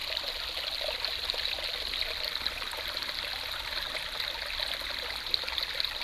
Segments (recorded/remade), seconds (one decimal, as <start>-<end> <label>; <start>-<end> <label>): 0.0-6.0 recorded